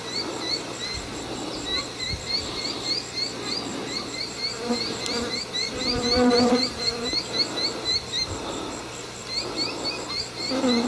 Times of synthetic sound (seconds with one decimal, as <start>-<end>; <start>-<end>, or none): 3.7-7.2